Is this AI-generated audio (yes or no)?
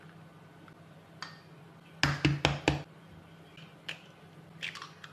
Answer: no